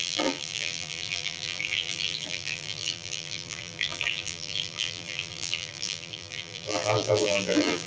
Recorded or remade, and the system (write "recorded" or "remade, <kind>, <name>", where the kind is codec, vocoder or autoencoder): remade, vocoder, BigVGAN v2